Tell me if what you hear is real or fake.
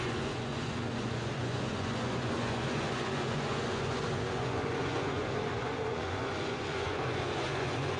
fake